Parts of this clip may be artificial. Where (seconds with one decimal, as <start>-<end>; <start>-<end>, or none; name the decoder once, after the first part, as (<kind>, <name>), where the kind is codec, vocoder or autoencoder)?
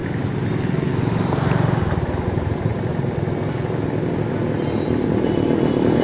none